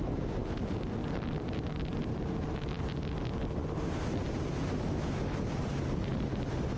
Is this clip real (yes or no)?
yes